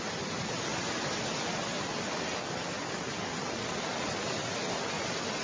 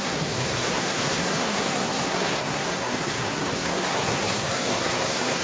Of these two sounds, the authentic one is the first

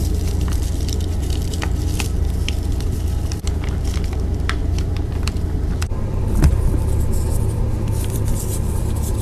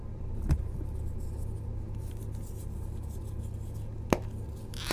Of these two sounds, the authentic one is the second